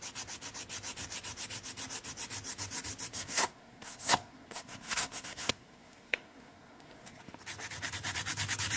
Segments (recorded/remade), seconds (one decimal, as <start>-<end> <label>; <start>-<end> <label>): 0.0-3.1 recorded; 3.1-7.2 remade; 7.2-8.8 recorded